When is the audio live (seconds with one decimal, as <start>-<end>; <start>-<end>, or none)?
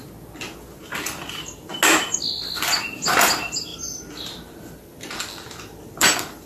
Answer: 0.0-6.5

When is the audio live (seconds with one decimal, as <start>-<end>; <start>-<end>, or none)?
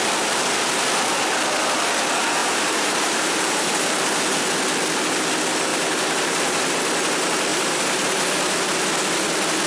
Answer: 0.0-2.4; 4.0-5.7; 6.7-7.5; 8.2-9.7